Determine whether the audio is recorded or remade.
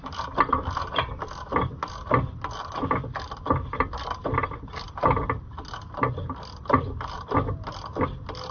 recorded